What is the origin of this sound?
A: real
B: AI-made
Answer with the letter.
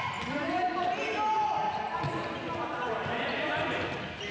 A